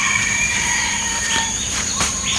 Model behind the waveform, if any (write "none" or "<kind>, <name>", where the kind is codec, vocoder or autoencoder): vocoder, BigVGAN v2